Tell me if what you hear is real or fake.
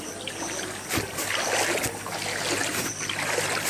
real